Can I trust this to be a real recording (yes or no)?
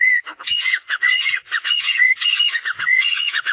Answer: no